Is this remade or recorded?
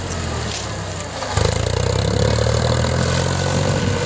recorded